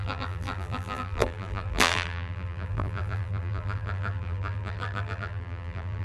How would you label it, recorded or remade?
remade